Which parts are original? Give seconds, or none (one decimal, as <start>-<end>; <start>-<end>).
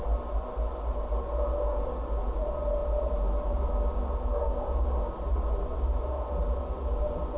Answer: 0.0-7.4